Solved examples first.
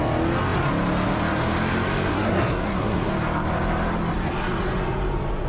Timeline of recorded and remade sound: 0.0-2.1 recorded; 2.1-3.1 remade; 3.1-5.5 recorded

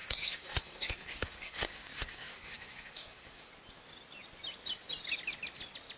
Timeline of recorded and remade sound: 0.0-3.5 remade; 3.5-6.0 recorded

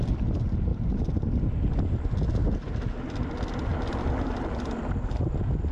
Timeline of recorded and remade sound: 0.0-5.7 recorded